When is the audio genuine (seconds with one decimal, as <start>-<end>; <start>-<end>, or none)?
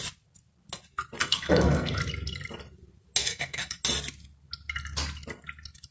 0.0-1.2; 2.0-3.2; 3.8-5.9